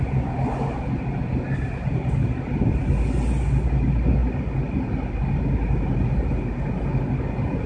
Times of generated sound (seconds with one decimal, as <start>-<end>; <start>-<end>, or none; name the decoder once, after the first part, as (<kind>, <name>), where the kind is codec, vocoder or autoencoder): none